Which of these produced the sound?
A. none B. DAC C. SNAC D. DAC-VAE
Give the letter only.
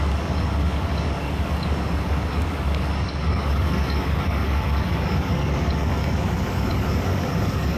B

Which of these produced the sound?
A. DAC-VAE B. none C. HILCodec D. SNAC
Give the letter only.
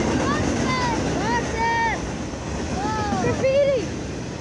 B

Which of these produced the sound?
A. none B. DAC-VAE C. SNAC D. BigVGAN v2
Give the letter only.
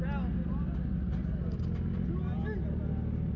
A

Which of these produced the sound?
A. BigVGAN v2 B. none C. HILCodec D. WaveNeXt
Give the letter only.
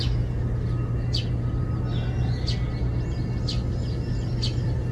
B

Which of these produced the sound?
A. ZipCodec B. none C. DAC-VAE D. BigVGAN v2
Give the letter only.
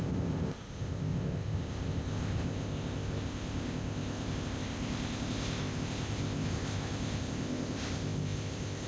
A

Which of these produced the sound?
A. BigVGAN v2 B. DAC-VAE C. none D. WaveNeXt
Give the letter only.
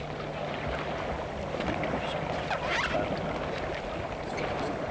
C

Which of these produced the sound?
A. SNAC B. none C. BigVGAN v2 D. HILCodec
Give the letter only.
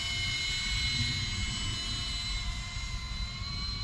B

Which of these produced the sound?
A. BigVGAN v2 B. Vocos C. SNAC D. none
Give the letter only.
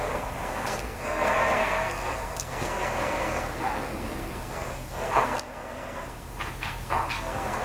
C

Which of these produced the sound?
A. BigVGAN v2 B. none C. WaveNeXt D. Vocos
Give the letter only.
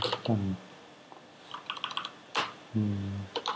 B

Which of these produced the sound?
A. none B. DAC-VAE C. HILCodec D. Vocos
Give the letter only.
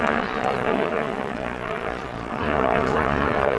D